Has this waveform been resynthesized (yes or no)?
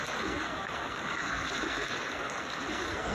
yes